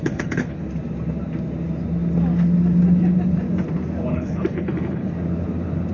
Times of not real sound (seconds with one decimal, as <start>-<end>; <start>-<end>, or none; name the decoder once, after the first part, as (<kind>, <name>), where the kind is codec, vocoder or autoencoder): 0.0-0.6 (codec, HILCodec); 4.1-5.1